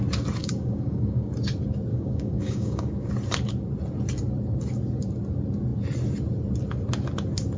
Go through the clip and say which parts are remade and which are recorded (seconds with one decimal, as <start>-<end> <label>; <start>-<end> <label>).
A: 0.0-0.4 recorded; 0.4-1.3 remade; 1.3-1.9 recorded; 1.9-3.1 remade; 3.1-7.6 recorded